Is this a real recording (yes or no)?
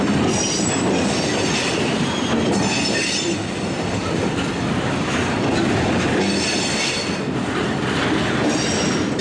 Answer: yes